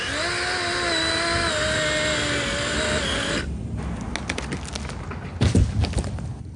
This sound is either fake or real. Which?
real